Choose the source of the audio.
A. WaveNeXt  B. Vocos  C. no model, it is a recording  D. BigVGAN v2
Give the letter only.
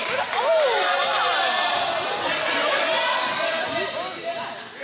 C